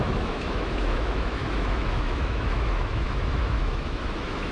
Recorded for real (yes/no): no